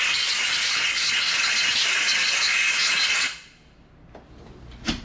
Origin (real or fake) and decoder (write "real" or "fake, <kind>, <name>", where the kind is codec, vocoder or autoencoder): real